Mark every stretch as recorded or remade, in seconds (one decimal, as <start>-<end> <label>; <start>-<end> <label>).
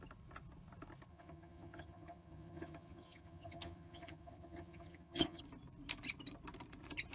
0.0-1.1 recorded; 1.1-5.4 remade; 5.4-7.1 recorded